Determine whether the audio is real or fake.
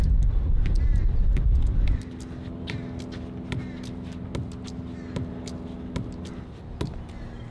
real